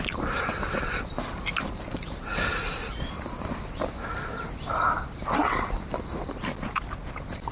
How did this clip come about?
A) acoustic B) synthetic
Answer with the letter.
A